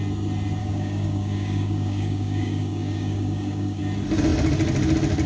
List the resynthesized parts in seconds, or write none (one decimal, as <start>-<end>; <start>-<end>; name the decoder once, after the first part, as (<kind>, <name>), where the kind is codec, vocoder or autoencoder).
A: 0.6-3.8 (codec, DAC)